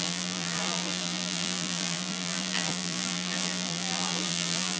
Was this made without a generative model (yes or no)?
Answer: no